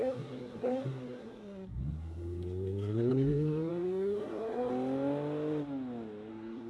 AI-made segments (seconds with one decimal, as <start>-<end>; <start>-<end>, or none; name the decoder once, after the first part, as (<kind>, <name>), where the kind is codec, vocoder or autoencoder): 0.0-4.7 (codec, SNAC); 6.3-6.7